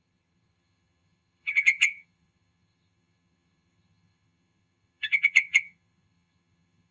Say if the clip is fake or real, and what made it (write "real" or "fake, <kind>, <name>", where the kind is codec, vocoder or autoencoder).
fake, vocoder, HiFi-GAN